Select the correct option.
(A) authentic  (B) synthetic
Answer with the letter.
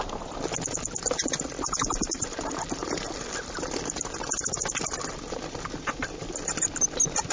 A